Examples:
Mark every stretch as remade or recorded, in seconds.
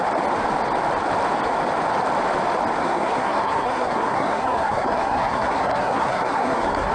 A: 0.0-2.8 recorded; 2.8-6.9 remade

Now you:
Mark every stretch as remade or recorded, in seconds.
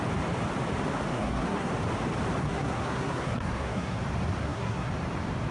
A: 0.0-1.1 recorded; 1.1-1.7 remade; 1.7-2.4 recorded; 2.4-4.0 remade; 4.0-4.4 recorded; 4.4-4.9 remade; 4.9-5.5 recorded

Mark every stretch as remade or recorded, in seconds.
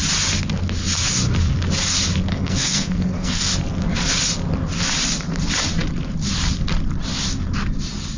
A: 0.0-2.3 recorded; 2.3-3.5 remade; 3.5-8.2 recorded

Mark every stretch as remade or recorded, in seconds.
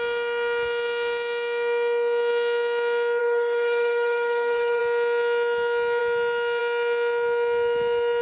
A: 0.0-3.2 recorded; 3.2-4.8 remade; 4.8-8.2 recorded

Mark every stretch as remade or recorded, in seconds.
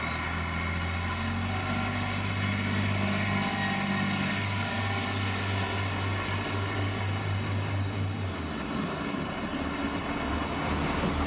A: 0.0-11.3 recorded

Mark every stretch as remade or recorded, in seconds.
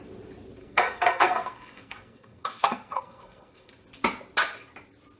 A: 0.0-0.6 recorded; 0.6-3.7 remade; 3.7-5.2 recorded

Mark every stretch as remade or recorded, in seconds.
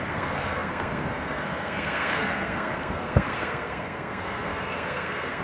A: 0.0-5.4 remade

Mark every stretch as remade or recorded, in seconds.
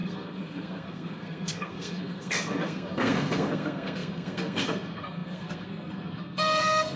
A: 0.0-7.0 remade